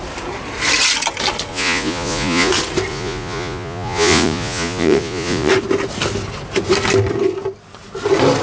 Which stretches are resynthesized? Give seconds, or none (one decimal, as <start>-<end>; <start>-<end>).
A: 1.5-2.5; 2.9-5.5